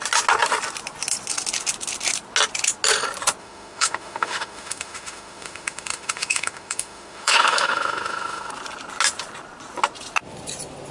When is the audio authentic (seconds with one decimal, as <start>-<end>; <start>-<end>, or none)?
0.0-3.4; 8.5-10.9